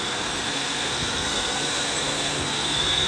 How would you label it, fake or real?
fake